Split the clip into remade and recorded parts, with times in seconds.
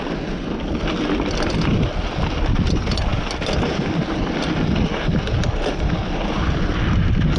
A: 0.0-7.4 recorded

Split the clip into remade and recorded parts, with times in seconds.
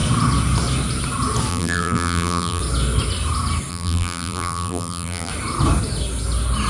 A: 0.0-1.5 recorded; 1.5-2.6 remade; 2.6-3.7 recorded; 3.7-5.3 remade; 5.3-6.7 recorded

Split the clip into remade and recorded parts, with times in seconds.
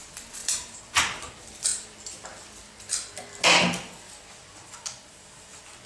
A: 0.0-0.4 recorded; 0.4-1.0 remade; 1.0-5.9 recorded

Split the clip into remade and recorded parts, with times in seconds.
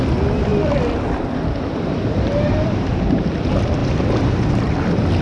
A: 0.0-0.5 recorded; 0.5-3.4 remade; 3.4-3.8 recorded; 3.8-4.5 remade; 4.5-5.2 recorded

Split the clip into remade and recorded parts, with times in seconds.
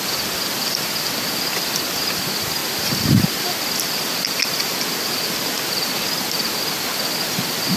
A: 0.0-7.8 recorded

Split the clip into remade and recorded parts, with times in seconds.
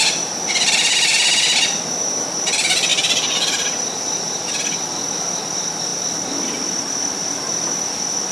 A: 0.0-2.9 recorded; 2.9-4.8 remade; 4.8-8.3 recorded